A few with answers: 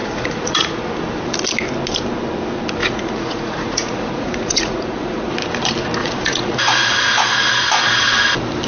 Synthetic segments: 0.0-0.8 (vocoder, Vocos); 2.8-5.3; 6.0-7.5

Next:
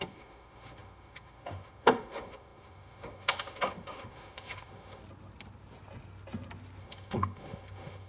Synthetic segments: 0.0-5.0 (autoencoder, DAC-VAE); 6.8-8.1